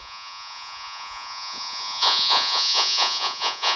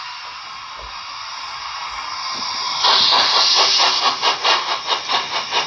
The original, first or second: second